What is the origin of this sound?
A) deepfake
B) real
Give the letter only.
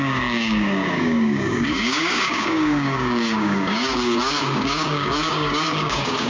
A